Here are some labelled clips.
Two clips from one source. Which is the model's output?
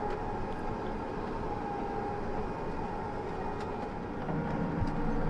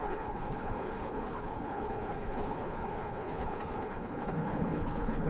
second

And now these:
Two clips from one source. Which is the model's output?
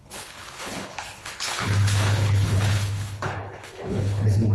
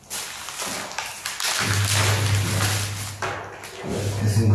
first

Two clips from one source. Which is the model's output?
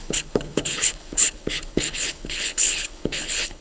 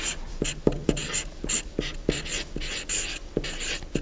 first